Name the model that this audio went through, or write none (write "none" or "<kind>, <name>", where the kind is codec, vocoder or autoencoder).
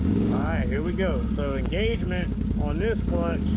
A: codec, DAC